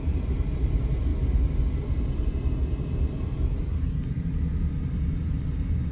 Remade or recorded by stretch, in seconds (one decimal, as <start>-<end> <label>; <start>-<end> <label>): 0.0-5.9 recorded